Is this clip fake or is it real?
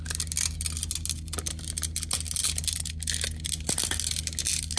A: real